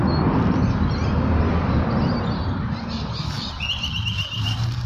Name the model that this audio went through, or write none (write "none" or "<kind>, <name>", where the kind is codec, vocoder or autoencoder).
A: none